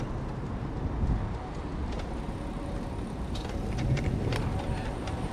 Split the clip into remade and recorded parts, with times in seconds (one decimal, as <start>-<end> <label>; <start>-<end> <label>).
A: 0.0-1.8 recorded; 1.8-5.3 remade